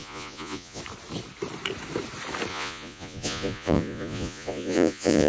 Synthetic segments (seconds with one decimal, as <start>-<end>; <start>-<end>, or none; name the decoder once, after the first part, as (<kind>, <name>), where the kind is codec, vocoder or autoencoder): 0.0-0.8 (vocoder, Vocos); 2.5-5.3